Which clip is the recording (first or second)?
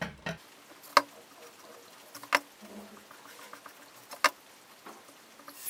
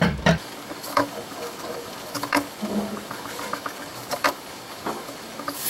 first